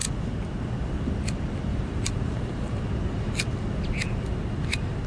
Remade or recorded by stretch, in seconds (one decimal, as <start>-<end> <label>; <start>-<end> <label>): 0.0-1.7 recorded; 1.7-2.8 remade; 2.8-5.1 recorded